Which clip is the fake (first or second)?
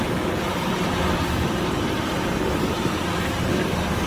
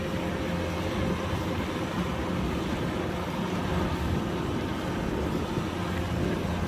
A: first